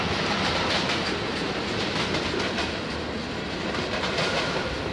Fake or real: real